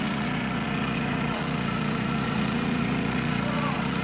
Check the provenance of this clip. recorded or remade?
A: remade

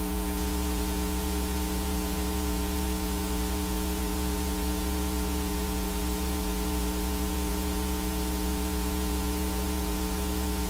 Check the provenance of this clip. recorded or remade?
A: remade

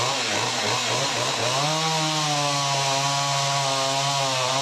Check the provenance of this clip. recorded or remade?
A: recorded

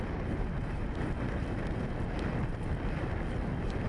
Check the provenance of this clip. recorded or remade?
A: recorded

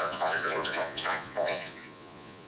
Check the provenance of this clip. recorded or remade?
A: remade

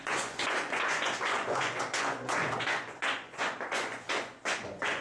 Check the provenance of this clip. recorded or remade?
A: remade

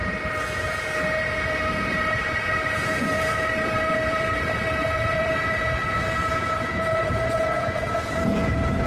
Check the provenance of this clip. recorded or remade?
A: remade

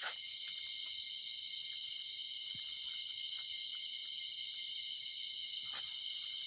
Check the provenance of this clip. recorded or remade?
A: recorded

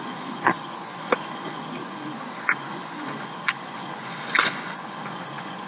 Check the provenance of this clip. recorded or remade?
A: remade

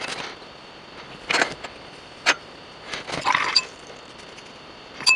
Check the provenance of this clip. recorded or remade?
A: recorded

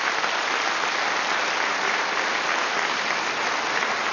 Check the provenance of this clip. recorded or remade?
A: recorded